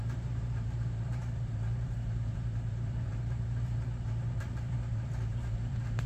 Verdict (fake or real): fake